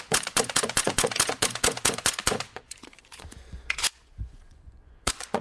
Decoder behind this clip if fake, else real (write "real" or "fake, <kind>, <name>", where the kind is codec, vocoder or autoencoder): fake, vocoder, Vocos